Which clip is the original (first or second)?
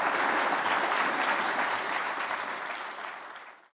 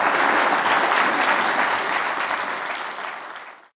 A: second